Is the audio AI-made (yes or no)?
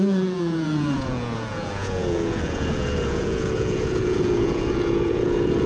yes